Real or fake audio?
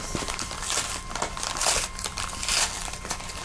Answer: real